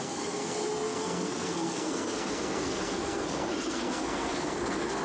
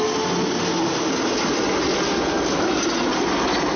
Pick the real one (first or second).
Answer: second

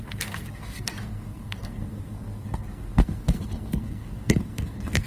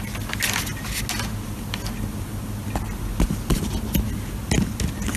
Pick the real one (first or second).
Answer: second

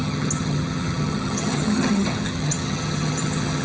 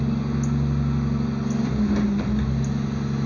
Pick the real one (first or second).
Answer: second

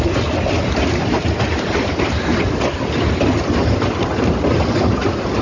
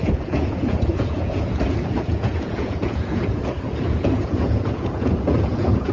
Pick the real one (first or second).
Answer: first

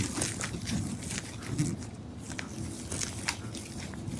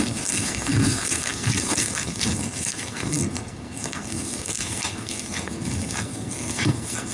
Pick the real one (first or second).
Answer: first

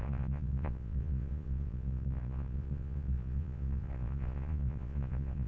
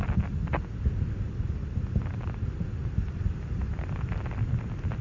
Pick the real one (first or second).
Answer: second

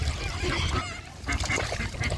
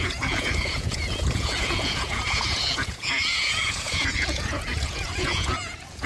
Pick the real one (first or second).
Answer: first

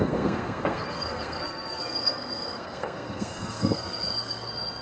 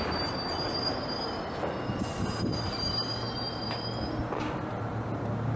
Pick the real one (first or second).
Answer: second